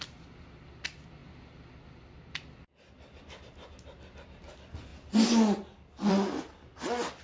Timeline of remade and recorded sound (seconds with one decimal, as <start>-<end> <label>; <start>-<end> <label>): 0.0-7.2 recorded

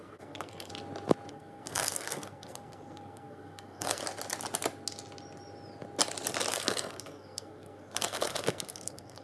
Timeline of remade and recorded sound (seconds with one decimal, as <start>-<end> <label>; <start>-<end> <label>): 0.0-0.7 remade; 0.7-1.3 recorded; 1.3-4.0 remade; 4.0-6.5 recorded; 6.5-9.2 remade

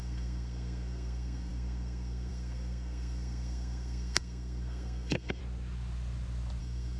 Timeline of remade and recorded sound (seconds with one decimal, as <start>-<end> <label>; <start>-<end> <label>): 0.0-5.4 remade; 5.4-6.6 recorded; 6.6-7.0 remade

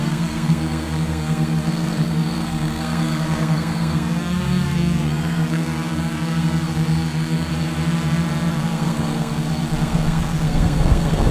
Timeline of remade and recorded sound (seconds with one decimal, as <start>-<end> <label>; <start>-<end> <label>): 0.0-7.5 remade; 7.5-8.5 recorded; 8.5-11.3 remade